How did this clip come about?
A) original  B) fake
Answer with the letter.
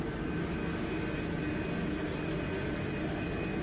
A